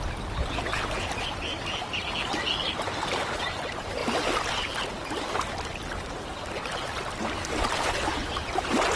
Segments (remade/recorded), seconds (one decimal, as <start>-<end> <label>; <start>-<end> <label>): 0.0-9.0 recorded